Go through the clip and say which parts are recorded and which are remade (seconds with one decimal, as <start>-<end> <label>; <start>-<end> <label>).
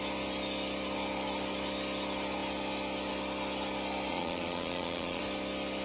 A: 0.0-4.1 recorded; 4.1-5.2 remade; 5.2-5.8 recorded